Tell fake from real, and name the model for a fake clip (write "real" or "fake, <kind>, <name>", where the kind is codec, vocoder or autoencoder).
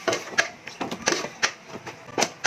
real